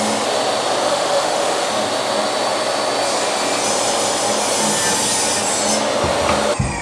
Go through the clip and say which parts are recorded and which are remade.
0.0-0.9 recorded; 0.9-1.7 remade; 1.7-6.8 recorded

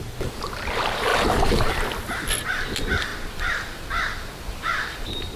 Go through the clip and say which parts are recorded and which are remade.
0.0-5.4 recorded